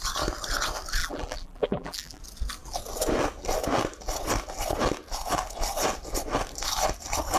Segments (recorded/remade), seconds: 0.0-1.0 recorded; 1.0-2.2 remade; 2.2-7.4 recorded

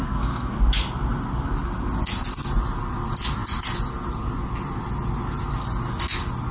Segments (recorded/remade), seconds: 0.0-0.6 remade; 0.6-6.5 recorded

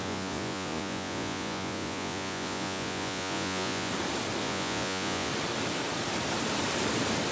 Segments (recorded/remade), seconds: 0.0-3.9 remade; 3.9-4.4 recorded; 4.4-5.3 remade; 5.3-7.3 recorded

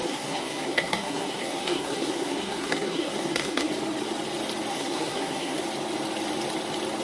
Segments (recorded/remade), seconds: 0.0-3.7 remade; 3.7-4.7 recorded; 4.7-5.6 remade; 5.6-7.0 recorded

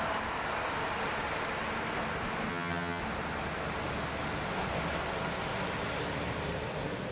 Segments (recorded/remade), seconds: 0.0-2.5 recorded; 2.5-3.0 remade; 3.0-7.1 recorded

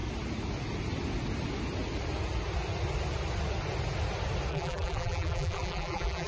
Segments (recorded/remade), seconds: 0.0-4.5 recorded; 4.5-6.3 remade